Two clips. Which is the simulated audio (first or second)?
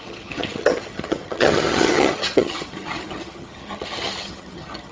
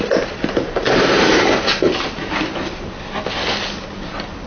first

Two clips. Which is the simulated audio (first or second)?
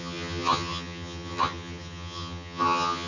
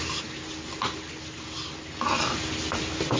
first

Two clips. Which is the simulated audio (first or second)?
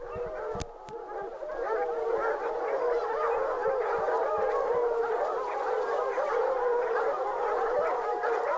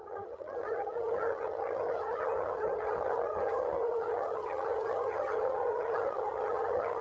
second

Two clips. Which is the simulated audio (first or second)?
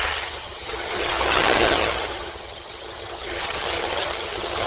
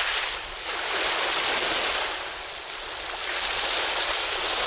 first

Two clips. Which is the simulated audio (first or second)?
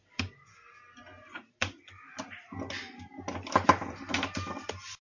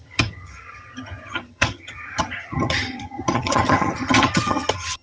second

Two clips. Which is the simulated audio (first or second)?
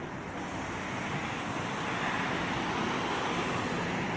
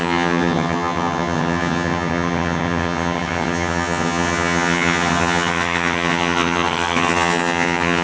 second